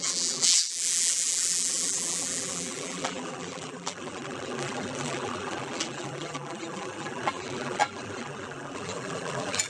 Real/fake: fake